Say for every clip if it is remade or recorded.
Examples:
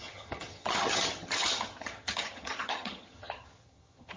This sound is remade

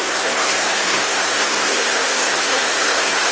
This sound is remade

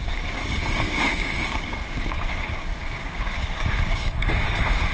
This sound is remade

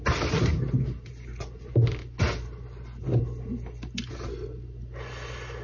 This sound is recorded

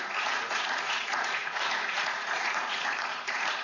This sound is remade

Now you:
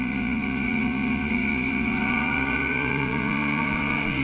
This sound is remade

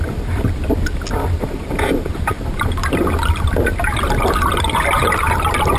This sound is recorded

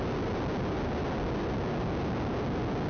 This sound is recorded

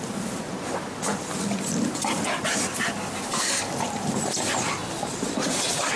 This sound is recorded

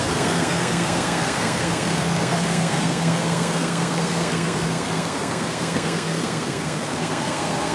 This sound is remade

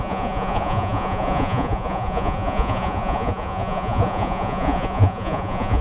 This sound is remade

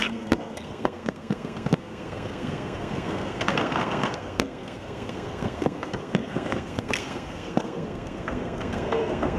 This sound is remade